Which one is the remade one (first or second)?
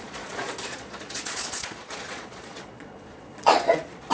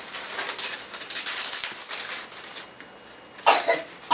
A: first